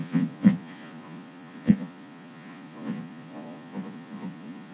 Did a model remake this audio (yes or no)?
yes